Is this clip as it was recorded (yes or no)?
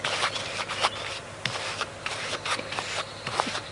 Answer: yes